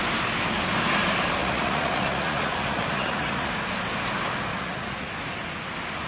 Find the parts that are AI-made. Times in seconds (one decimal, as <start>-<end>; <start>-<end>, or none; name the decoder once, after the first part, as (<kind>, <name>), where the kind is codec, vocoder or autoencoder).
1.4-3.5 (vocoder, Vocos); 4.5-5.1